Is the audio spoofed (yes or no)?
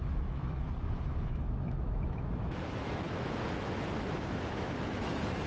yes